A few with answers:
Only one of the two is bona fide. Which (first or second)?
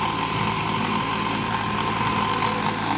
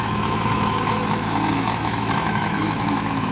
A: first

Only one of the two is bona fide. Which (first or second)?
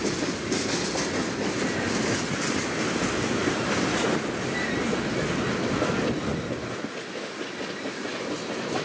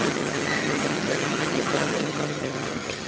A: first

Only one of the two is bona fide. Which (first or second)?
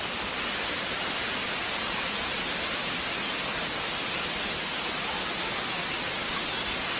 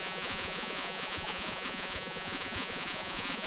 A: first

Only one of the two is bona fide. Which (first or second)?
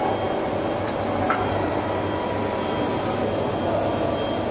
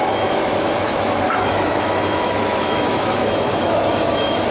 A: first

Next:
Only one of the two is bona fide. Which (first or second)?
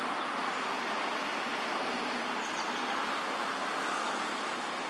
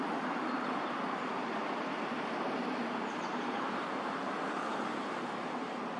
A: first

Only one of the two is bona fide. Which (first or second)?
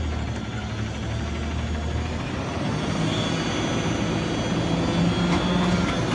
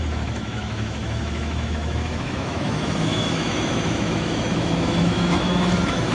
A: first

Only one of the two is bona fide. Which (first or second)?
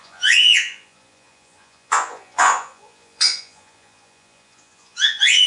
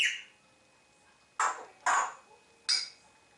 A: second